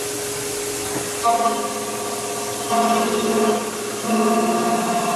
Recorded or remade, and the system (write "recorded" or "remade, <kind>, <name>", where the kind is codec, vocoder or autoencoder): recorded